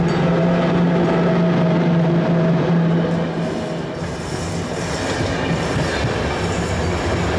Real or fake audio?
real